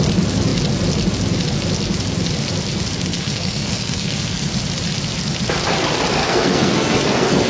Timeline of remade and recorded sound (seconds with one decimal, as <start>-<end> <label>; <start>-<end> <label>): 0.0-3.1 recorded; 3.1-4.5 remade; 4.5-6.2 recorded; 6.2-7.5 remade